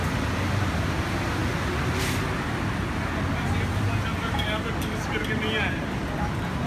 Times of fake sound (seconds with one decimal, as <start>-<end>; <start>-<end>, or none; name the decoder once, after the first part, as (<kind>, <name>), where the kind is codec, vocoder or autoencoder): none